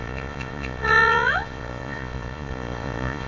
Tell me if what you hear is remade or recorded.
remade